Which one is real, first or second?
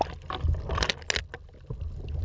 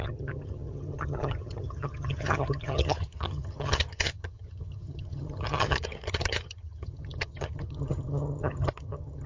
first